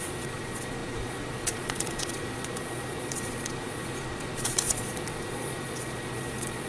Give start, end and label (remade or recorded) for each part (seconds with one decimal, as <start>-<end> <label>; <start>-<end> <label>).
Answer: 0.0-6.7 remade